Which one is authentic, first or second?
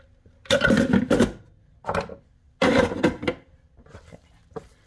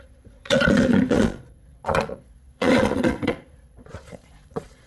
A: first